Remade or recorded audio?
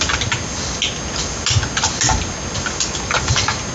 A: recorded